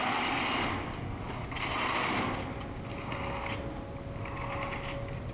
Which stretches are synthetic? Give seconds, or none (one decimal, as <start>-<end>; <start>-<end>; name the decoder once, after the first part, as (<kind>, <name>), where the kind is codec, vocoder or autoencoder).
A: 2.9-3.4 (codec, DAC)